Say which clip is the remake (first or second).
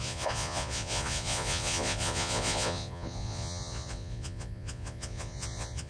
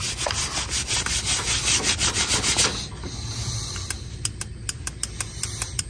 first